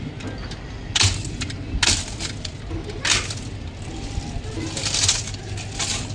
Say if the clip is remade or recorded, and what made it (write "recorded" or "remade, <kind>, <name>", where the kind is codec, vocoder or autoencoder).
recorded